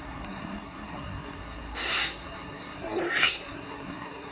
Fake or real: fake